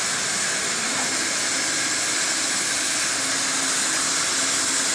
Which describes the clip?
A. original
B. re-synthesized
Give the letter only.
A